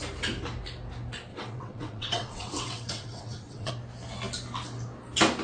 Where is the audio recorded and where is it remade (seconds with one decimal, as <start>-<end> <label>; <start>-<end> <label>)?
0.0-1.3 recorded; 1.3-3.7 remade; 3.7-5.4 recorded